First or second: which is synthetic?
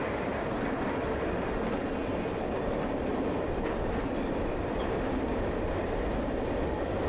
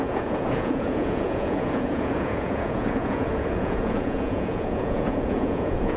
second